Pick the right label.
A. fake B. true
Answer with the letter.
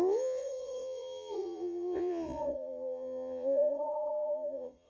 A